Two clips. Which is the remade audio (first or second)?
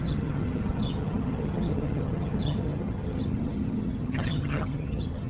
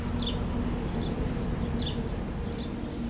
first